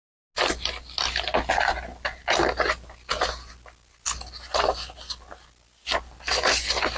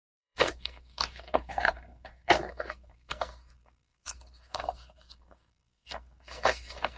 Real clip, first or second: first